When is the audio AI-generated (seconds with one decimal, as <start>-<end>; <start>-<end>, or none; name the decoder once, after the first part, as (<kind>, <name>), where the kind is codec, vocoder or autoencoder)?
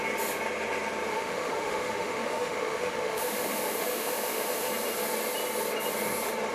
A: 1.1-4.7 (autoencoder, DAC-VAE)